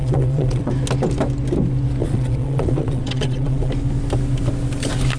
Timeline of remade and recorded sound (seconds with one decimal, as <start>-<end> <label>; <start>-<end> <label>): 0.0-0.7 remade; 0.7-2.0 recorded; 2.0-3.7 remade; 3.7-5.2 recorded